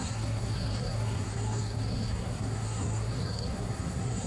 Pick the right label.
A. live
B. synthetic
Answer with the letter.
B